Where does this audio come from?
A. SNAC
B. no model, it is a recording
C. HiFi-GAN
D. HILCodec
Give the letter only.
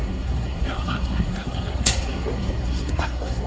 A